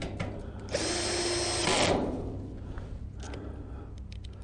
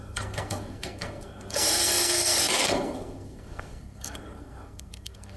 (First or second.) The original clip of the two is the first